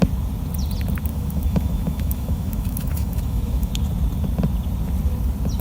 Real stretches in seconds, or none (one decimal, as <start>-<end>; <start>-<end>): 0.0-1.1; 3.7-5.6